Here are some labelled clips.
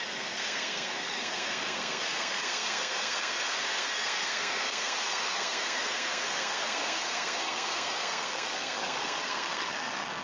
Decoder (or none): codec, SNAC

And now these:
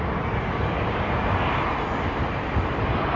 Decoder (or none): none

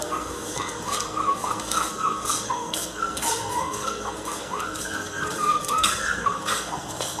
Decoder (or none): codec, SNAC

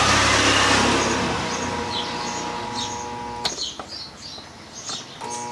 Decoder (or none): none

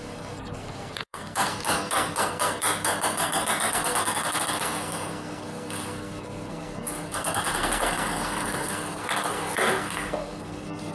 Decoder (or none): codec, SNAC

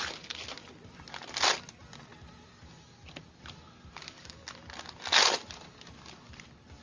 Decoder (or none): none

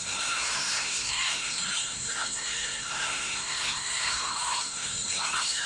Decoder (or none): codec, SNAC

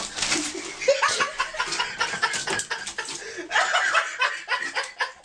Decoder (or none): none